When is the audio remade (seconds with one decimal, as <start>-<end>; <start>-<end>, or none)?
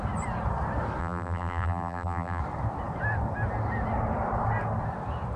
1.0-2.4